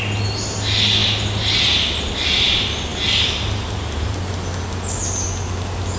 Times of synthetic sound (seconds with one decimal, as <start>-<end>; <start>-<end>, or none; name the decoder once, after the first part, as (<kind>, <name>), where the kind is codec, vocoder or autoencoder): none